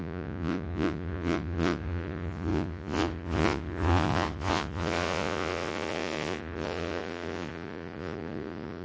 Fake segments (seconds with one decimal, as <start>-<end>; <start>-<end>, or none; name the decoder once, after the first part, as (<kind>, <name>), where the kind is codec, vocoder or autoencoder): 0.0-8.8 (vocoder, Vocos)